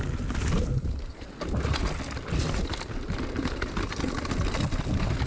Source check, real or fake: real